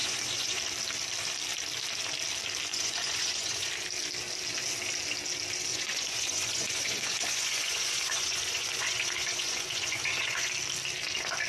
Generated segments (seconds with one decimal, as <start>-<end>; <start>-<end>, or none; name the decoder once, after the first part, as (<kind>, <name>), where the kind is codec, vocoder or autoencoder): 0.0-0.6 (vocoder, Vocos); 2.7-3.7; 5.7-10.5